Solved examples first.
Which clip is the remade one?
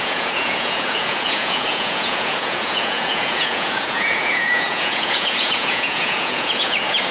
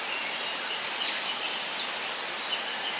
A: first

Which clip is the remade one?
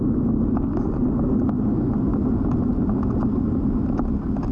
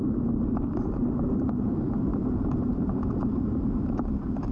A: second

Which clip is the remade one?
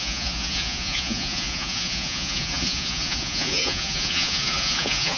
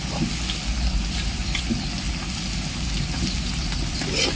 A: first